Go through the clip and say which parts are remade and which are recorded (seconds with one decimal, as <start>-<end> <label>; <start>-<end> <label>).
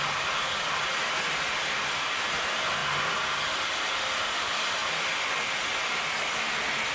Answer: 0.0-6.9 recorded